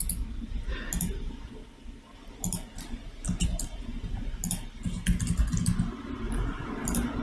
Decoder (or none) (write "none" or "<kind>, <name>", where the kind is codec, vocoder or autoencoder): none